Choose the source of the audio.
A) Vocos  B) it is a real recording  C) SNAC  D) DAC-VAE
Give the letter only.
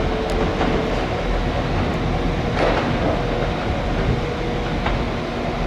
B